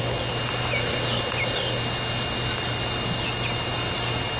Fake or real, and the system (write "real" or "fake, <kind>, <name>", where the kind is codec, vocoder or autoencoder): real